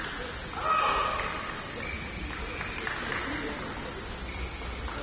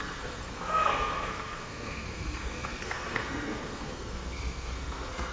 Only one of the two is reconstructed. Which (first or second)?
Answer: second